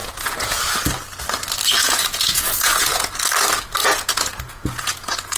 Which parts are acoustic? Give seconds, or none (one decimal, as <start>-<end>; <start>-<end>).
0.6-1.8; 3.2-3.8